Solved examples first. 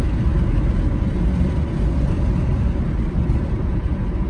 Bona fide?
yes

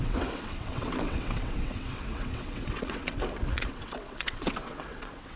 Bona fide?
no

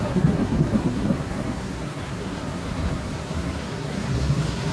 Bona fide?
no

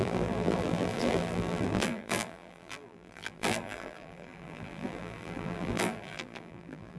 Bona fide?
no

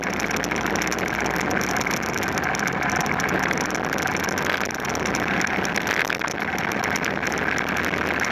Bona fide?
yes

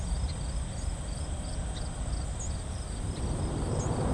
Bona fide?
yes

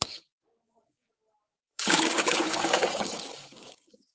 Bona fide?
no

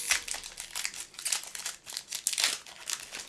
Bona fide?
yes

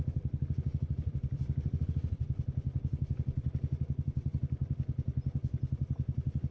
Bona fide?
yes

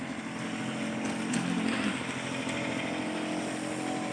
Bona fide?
yes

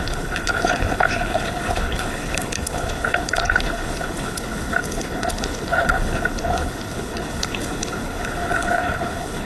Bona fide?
no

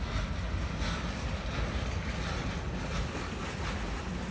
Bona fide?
yes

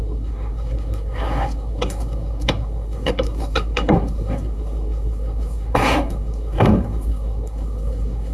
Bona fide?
no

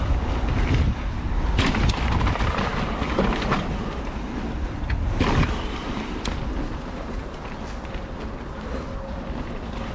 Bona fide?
yes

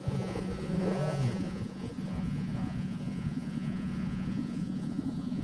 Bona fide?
no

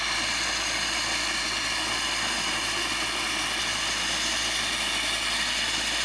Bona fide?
yes